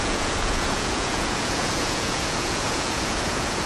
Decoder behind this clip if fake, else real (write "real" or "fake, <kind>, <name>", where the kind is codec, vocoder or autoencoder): fake, vocoder, Vocos